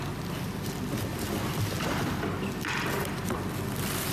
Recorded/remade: recorded